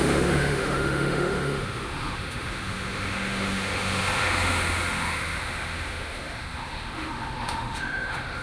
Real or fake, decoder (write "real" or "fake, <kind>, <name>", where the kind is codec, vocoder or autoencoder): fake, autoencoder, DAC-VAE